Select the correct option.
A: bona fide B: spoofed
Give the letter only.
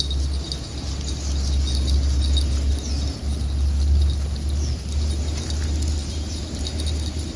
A